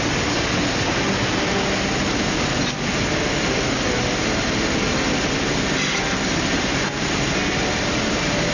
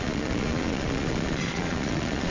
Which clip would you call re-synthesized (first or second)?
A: second